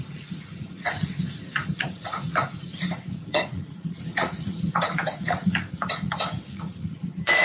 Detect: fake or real fake